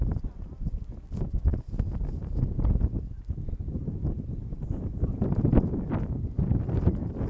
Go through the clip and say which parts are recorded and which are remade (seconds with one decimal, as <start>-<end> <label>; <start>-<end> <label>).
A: 0.0-7.3 recorded